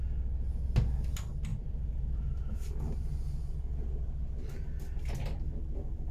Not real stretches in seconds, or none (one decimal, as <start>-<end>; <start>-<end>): 1.5-2.3